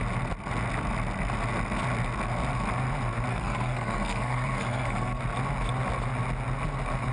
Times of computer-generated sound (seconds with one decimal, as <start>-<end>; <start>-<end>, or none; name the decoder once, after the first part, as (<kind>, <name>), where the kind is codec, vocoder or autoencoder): 3.3-5.2 (codec, SNAC)